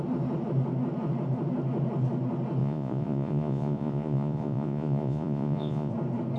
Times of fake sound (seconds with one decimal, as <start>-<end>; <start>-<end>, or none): 2.6-5.9